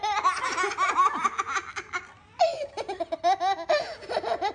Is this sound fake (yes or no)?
no